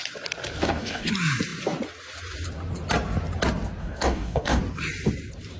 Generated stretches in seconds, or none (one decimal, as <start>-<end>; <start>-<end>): 0.6-1.1; 3.8-4.6